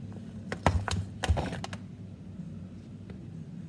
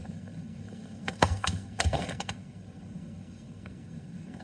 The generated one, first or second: second